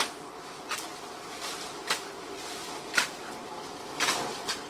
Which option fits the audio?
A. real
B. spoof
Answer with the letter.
B